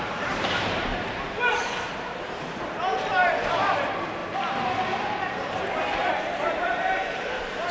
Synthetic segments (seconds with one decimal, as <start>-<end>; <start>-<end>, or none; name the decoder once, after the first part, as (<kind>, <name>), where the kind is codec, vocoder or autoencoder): 0.0-0.9 (vocoder, BigVGAN v2); 1.8-4.2; 6.1-7.7